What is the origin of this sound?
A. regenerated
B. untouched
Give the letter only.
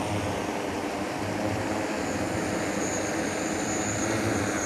A